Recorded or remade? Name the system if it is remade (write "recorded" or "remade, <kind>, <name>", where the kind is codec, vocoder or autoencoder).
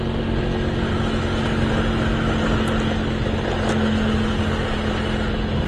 recorded